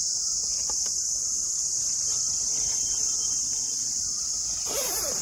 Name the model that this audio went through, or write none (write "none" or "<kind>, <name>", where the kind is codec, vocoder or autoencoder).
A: vocoder, BigVGAN v2